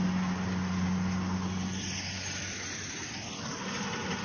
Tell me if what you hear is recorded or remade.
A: recorded